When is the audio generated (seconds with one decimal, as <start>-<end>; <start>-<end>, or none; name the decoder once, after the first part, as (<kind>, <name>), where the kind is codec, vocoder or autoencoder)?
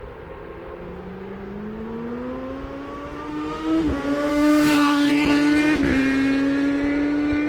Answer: 3.3-3.9 (autoencoder, DAC-VAE); 4.3-5.1